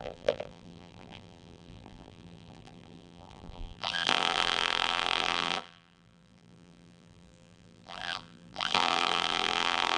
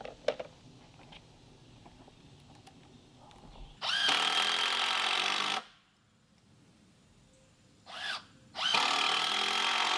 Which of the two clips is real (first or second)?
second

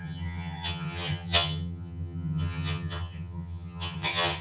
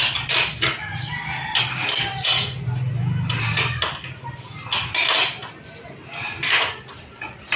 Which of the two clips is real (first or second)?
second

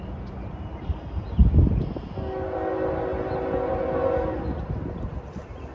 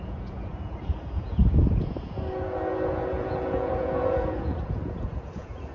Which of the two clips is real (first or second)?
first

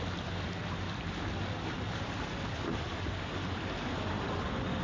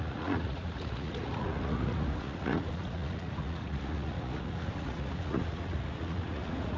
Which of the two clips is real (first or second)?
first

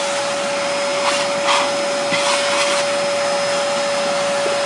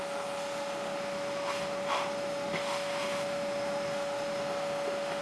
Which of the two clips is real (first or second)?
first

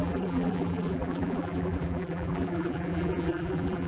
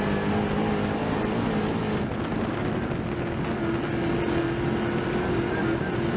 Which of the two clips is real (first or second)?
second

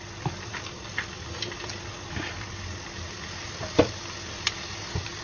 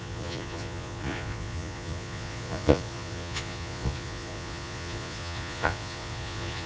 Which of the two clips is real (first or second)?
first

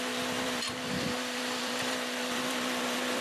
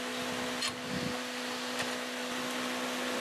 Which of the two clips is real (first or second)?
second